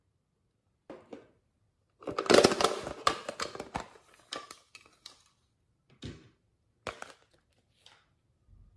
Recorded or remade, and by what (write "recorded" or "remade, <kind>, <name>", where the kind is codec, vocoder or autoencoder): recorded